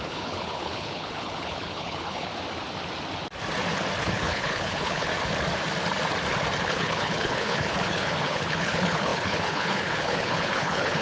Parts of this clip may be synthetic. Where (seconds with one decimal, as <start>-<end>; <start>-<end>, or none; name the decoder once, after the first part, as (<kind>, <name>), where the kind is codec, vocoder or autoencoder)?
0.0-2.3 (codec, HILCodec); 4.1-5.1; 6.6-11.0